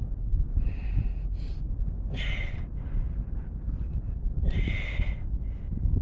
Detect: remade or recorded recorded